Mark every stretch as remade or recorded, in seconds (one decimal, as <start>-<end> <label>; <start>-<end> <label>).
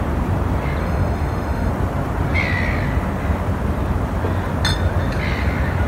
0.0-0.8 recorded; 0.8-1.7 remade; 1.7-5.9 recorded